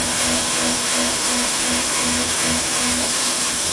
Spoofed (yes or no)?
yes